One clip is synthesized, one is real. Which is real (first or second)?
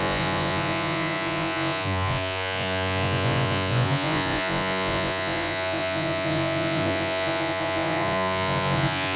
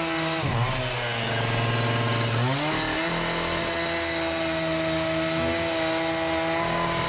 second